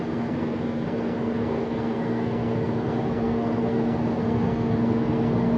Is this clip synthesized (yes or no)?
yes